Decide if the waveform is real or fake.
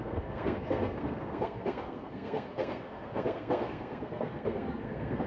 fake